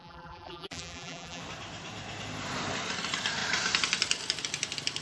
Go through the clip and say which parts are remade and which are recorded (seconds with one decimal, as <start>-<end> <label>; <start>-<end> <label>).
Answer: 0.0-1.4 remade; 1.4-5.0 recorded